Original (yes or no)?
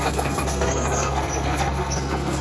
no